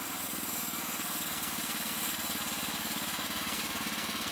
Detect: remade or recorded remade